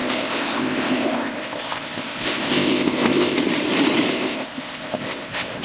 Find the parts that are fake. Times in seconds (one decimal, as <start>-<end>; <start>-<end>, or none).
0.0-3.4; 4.1-5.6